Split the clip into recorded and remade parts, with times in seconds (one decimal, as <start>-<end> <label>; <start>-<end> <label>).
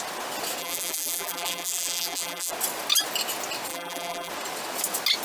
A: 0.0-0.6 recorded; 0.6-2.5 remade; 2.5-3.7 recorded; 3.7-4.3 remade; 4.3-5.2 recorded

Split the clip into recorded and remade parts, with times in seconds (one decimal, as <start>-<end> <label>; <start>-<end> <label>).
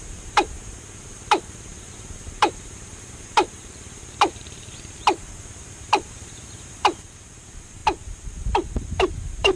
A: 0.0-7.8 remade; 7.8-8.8 recorded; 8.8-9.6 remade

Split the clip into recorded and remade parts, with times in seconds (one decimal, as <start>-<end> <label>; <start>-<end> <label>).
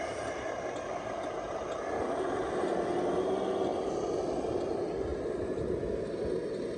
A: 0.0-1.6 remade; 1.6-6.8 recorded